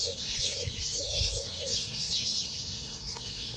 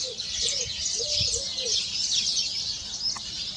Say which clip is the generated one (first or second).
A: first